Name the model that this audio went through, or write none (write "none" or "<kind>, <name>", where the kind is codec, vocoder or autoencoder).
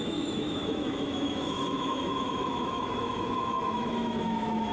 autoencoder, DAC-VAE